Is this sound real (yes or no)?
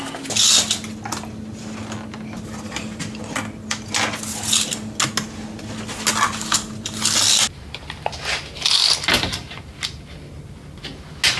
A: yes